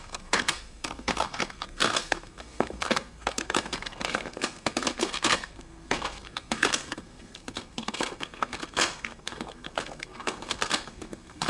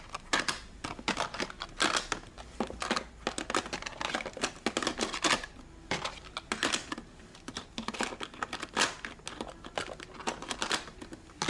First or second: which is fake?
first